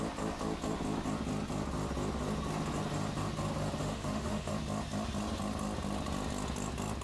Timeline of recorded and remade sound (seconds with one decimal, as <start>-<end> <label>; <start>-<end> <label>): 0.0-3.8 recorded; 3.8-4.5 remade; 4.5-7.0 recorded